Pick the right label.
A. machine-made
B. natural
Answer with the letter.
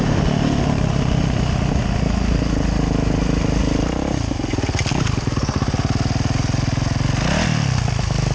B